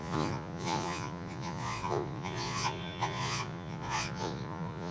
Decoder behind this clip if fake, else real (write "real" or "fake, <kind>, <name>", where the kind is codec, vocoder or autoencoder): fake, vocoder, Vocos